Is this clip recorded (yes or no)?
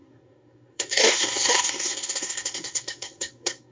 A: no